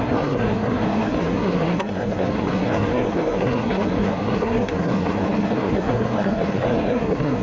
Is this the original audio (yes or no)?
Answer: no